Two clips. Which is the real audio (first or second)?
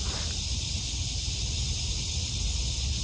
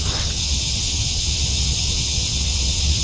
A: first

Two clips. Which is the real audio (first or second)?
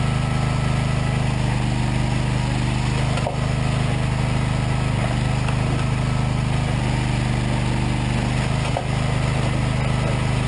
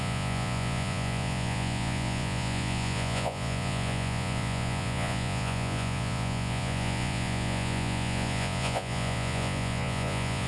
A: first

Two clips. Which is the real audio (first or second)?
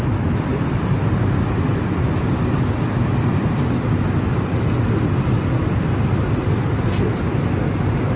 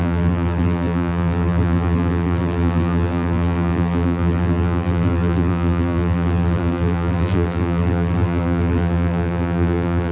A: first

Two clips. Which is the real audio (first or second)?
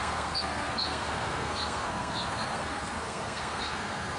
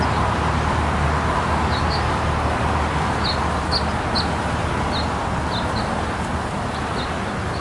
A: second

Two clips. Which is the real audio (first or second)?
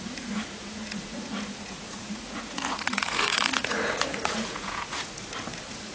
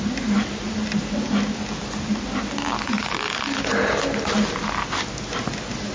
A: second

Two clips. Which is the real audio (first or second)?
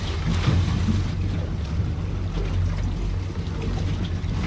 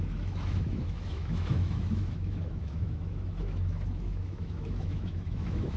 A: first